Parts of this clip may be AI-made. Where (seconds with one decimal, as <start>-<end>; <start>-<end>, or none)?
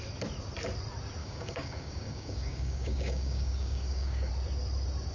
1.2-4.3